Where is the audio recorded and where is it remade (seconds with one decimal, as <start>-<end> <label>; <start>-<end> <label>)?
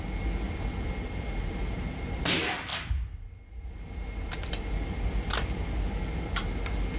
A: 0.0-7.0 recorded